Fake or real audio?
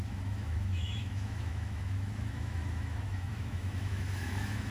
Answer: fake